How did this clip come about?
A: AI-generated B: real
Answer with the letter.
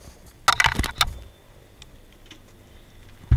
B